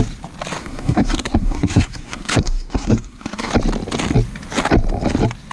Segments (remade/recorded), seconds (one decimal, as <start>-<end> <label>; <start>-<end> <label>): 0.0-0.6 recorded; 0.6-3.5 remade; 3.5-5.5 recorded